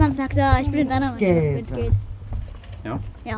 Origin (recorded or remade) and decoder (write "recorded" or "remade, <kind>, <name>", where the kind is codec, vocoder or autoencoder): recorded